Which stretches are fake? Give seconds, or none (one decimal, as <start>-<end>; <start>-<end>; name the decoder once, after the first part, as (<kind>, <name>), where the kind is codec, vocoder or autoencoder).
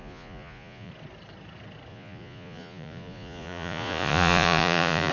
0.0-0.9 (vocoder, Vocos); 1.9-5.1